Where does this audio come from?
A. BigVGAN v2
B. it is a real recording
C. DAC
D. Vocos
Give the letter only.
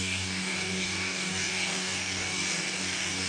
C